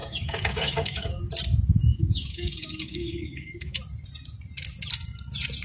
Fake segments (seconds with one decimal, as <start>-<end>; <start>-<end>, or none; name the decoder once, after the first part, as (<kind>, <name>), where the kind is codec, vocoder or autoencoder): 0.0-1.2 (codec, DAC); 1.9-3.8